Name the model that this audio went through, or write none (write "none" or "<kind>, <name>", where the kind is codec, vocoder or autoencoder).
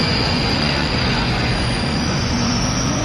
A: vocoder, Vocos